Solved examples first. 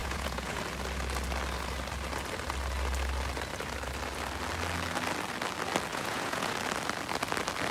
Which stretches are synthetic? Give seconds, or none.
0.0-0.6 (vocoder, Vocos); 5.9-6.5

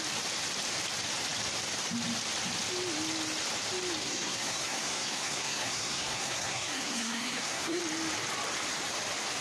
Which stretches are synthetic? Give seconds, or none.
4.0-7.8 (codec, SNAC)

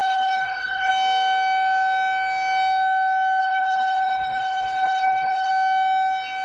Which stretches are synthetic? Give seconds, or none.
0.0-0.9 (codec, HILCodec); 3.4-5.5

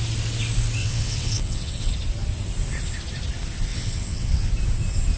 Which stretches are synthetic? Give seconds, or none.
0.8-1.9 (vocoder, WaveNeXt); 3.7-4.5

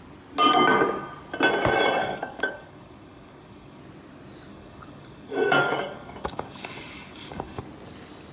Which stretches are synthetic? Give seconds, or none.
2.0-3.8 (codec, DAC); 4.5-7.6

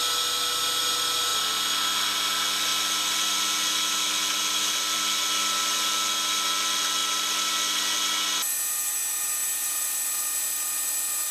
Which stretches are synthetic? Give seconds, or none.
7.0-7.5 (vocoder, BigVGAN v2); 9.4-10.0

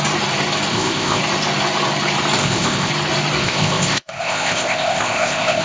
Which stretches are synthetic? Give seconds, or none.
0.7-1.2 (codec, ZipCodec); 2.4-2.9; 3.4-5.6